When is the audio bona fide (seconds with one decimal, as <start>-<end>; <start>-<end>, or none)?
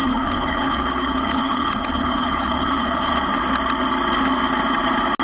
3.1-5.2